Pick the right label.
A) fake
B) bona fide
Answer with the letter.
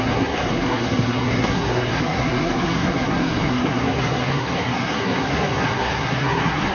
A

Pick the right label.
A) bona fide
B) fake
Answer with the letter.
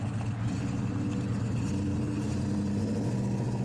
A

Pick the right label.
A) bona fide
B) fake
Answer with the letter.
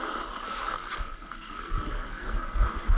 B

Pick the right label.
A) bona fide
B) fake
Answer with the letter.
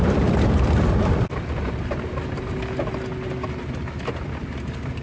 A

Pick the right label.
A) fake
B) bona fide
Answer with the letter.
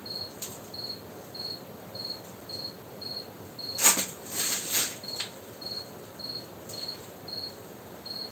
B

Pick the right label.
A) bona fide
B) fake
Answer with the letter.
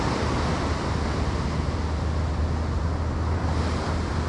A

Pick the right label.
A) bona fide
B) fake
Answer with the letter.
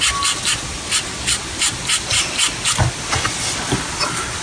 A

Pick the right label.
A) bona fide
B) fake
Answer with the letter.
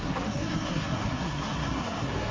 B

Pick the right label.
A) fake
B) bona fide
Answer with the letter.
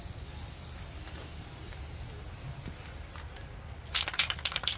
B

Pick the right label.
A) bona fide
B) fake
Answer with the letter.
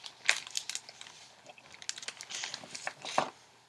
A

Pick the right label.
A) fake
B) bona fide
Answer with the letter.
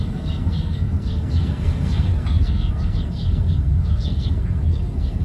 A